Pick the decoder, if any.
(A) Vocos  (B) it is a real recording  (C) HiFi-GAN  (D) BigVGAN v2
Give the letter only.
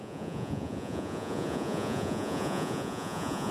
A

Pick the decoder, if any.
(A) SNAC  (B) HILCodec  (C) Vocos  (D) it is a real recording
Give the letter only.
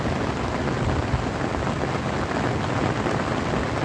D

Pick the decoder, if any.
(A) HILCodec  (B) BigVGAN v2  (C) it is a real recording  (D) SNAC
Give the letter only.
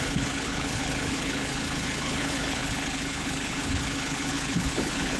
A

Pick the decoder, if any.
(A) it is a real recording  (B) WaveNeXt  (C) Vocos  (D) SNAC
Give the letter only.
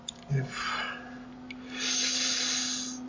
A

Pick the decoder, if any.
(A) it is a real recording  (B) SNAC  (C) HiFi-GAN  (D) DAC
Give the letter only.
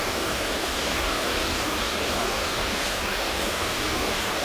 D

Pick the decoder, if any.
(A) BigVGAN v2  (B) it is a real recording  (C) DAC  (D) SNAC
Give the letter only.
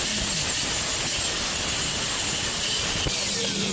B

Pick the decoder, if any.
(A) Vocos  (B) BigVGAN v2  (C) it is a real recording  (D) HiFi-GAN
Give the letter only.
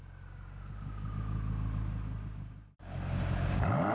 C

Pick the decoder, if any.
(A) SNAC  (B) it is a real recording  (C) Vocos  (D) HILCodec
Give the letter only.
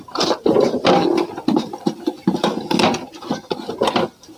B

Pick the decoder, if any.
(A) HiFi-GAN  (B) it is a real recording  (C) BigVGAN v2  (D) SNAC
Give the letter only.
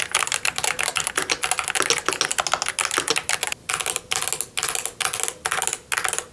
B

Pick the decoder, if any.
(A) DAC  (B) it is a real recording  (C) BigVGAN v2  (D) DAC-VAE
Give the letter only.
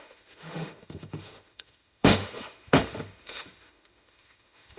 D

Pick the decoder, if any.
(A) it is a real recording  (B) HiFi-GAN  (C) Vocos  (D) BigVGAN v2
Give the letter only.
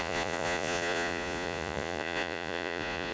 C